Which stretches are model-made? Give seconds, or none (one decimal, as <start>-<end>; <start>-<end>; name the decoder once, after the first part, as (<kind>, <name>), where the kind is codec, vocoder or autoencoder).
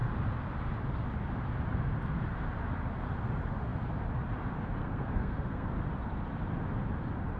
4.8-5.7 (codec, SNAC)